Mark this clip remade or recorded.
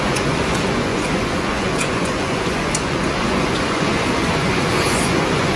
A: remade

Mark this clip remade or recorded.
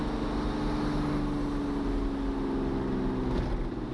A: recorded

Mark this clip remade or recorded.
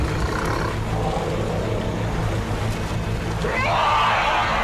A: recorded